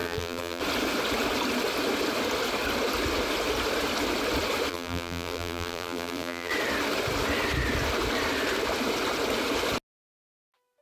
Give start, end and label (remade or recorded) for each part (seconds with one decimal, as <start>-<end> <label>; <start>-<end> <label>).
0.0-0.6 remade; 0.6-4.7 recorded; 4.7-6.5 remade; 6.5-10.8 recorded